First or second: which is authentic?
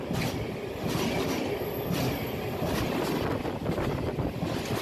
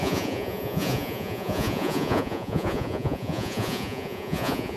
first